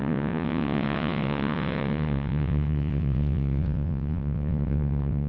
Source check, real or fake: fake